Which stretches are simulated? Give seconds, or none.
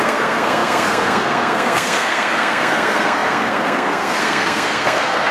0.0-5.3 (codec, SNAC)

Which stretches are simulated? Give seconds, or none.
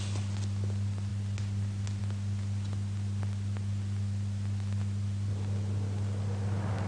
none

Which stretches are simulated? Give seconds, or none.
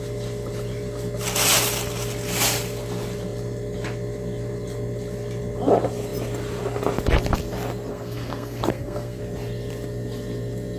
7.9-9.2 (codec, SNAC)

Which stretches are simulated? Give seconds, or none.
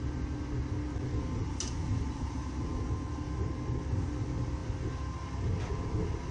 none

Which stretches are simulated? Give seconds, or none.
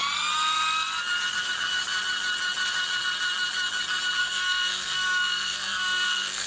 4.2-6.5 (codec, SNAC)